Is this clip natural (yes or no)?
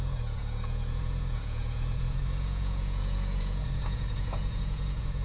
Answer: no